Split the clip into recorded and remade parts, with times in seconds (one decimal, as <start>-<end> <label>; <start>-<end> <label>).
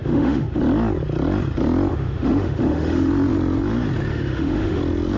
0.0-0.6 remade; 0.6-1.9 recorded; 1.9-3.1 remade; 3.1-4.1 recorded; 4.1-4.8 remade; 4.8-5.2 recorded